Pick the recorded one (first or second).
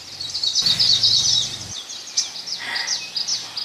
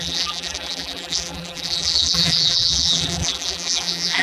first